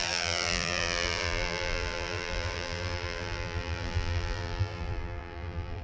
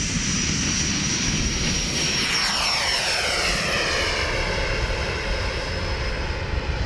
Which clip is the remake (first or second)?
first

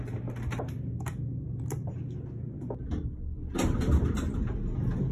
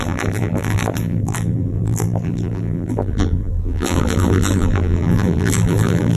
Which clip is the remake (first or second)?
second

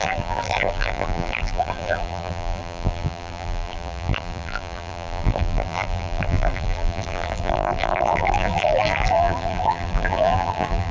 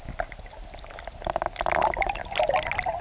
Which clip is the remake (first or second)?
first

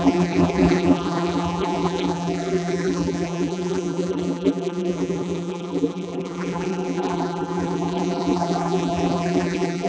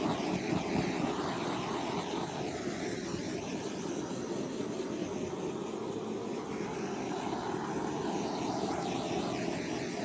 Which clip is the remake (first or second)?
first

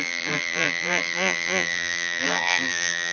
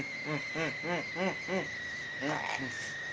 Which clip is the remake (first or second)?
first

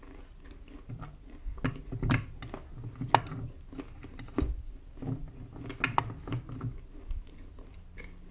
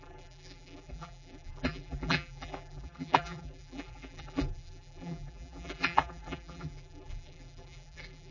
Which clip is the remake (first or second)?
second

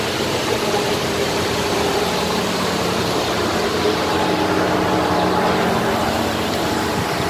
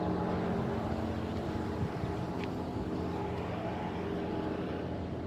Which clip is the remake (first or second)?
first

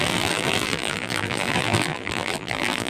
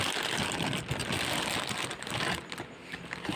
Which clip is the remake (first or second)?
first